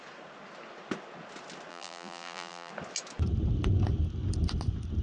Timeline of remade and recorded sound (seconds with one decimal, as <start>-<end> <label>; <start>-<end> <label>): 0.0-1.7 recorded; 1.7-2.7 remade; 2.7-5.0 recorded